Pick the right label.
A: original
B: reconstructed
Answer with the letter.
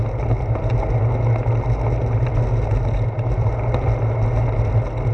A